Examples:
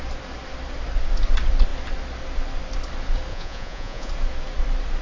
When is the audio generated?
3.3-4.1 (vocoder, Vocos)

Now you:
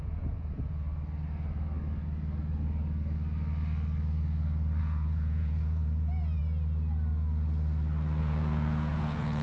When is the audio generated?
0.0-0.9 (vocoder, Vocos); 4.8-6.4; 8.2-9.4

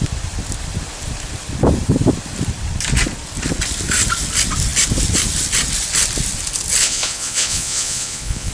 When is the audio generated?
6.8-8.5 (vocoder, Vocos)

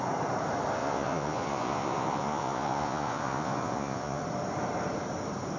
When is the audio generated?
0.8-4.2 (vocoder, Vocos)

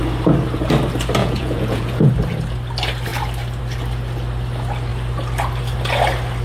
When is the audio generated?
1.2-2.1 (vocoder, Vocos)

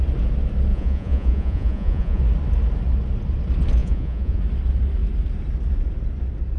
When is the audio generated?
0.7-2.2 (vocoder, Vocos); 3.8-4.4

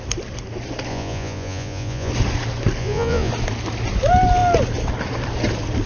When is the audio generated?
0.9-2.1 (vocoder, Vocos); 2.8-3.3

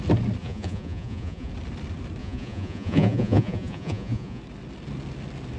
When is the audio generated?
0.4-1.5 (vocoder, Vocos); 2.2-4.4